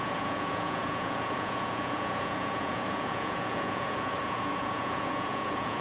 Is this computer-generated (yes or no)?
yes